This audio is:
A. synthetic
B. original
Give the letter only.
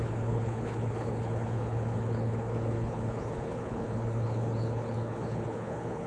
A